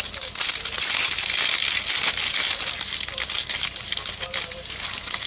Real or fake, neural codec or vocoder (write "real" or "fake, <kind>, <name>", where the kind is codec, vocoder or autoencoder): real